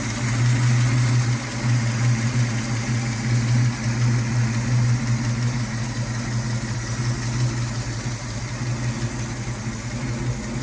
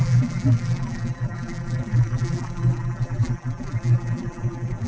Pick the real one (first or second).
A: first